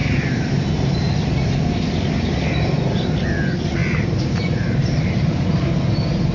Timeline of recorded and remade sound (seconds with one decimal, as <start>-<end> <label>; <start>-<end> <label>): 0.0-0.9 remade; 0.9-3.8 recorded; 3.8-5.3 remade; 5.3-6.3 recorded